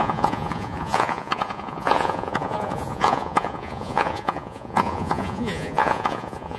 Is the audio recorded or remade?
remade